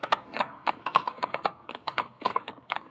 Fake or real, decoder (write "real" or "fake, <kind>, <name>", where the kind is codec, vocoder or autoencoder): fake, codec, SNAC